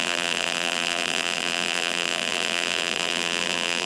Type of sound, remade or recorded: remade